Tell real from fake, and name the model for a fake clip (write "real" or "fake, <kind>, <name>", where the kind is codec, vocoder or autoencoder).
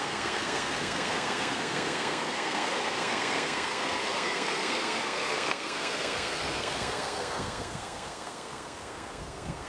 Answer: fake, codec, SNAC